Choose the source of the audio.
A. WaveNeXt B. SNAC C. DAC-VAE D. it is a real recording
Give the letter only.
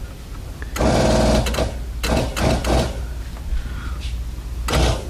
D